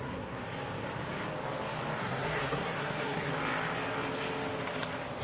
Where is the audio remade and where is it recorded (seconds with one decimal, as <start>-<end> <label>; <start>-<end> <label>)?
0.0-0.4 remade; 0.4-2.0 recorded; 2.0-3.3 remade; 3.3-5.2 recorded